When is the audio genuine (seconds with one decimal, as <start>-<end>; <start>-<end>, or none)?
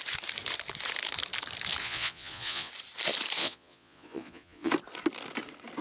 0.0-1.8; 2.7-3.4; 4.7-5.8